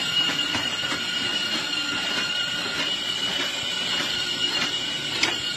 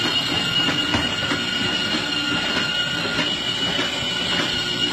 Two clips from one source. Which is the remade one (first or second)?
first